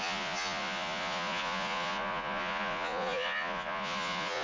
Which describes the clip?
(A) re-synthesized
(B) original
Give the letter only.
A